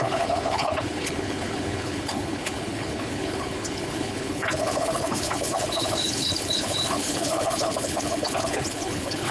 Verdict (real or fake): fake